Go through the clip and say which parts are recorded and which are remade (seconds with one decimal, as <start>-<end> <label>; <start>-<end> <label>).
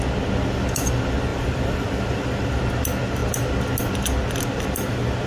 0.0-1.3 recorded; 1.3-2.6 remade; 2.6-5.3 recorded